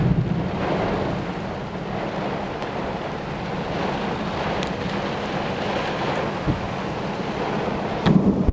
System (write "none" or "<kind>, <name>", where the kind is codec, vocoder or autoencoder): none